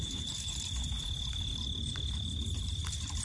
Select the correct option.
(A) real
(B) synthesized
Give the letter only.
A